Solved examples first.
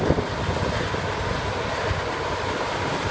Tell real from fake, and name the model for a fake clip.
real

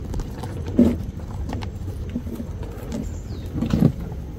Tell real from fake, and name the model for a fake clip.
real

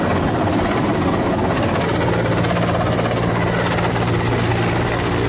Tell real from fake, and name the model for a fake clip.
real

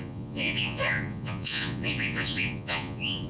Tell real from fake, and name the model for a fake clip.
fake, vocoder, Vocos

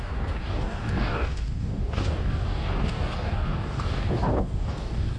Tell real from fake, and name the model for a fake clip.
fake, codec, DAC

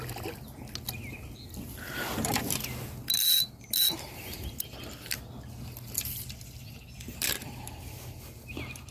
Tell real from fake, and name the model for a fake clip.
real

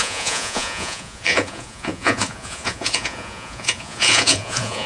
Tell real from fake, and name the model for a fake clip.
fake, vocoder, Vocos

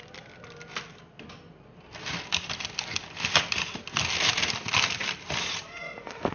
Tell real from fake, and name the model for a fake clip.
real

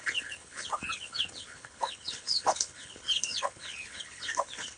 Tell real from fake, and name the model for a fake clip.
fake, codec, HILCodec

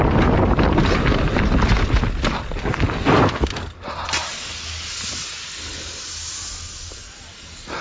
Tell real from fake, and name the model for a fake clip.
real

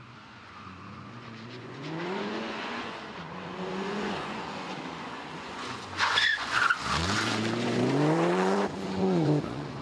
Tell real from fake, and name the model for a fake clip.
fake, vocoder, Vocos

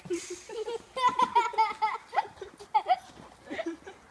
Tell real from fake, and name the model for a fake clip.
real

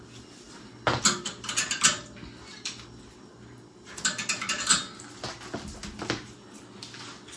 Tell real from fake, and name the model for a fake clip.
real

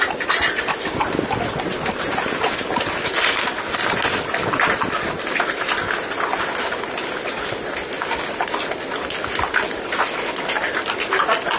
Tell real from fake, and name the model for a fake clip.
real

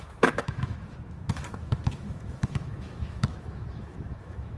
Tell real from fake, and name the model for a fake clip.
fake, autoencoder, DAC-VAE